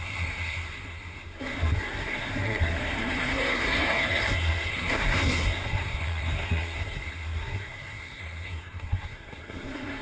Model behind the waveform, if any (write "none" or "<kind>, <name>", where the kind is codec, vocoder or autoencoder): codec, SNAC